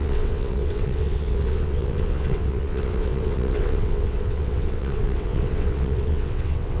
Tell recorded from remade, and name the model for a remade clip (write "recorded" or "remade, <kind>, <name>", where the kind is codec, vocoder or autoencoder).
remade, vocoder, WaveNeXt